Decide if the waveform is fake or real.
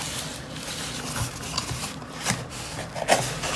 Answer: real